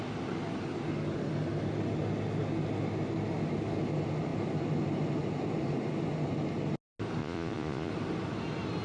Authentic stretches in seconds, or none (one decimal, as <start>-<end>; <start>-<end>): 0.0-7.2; 7.9-8.8